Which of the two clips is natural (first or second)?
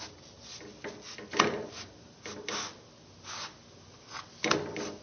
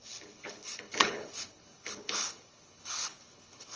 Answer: first